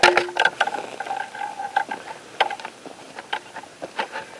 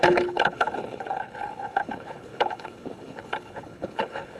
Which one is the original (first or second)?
first